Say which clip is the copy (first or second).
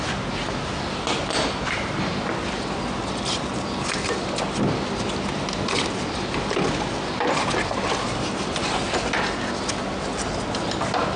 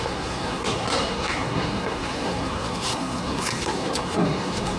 second